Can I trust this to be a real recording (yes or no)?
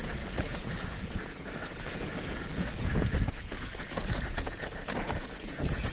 no